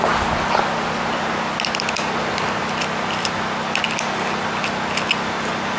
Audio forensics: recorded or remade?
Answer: recorded